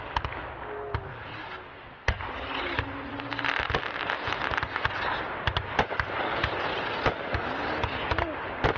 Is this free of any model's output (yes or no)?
yes